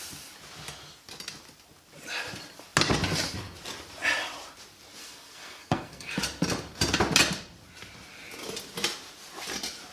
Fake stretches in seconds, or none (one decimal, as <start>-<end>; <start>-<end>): 5.0-6.2